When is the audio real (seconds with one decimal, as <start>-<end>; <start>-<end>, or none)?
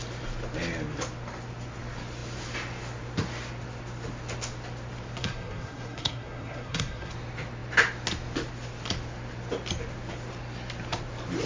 0.0-5.2; 7.1-11.5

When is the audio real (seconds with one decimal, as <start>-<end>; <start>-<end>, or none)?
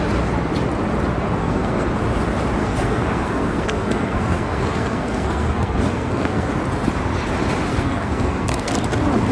0.0-1.4; 1.9-2.6; 6.5-7.7; 8.7-9.3